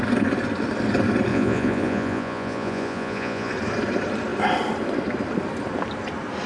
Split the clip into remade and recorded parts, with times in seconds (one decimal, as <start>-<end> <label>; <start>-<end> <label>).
0.0-1.3 recorded; 1.3-3.5 remade; 3.5-6.5 recorded

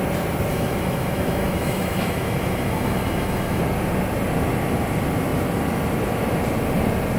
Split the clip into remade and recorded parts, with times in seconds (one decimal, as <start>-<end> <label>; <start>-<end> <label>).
0.0-0.5 recorded; 0.5-3.6 remade; 3.6-7.2 recorded